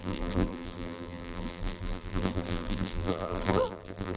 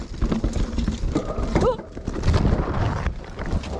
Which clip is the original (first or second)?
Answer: second